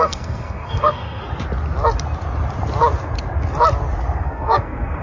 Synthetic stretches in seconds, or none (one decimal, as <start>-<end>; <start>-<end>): 0.0-1.2; 4.2-5.0